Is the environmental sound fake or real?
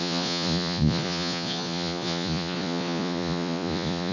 fake